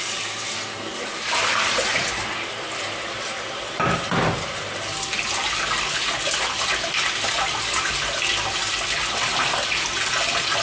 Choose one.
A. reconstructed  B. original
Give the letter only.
B